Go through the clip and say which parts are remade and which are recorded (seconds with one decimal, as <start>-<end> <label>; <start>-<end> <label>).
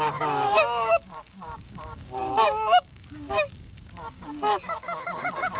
0.0-5.6 remade